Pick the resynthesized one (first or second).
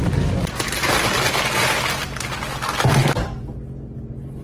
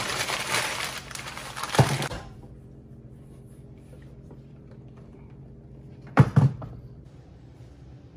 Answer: second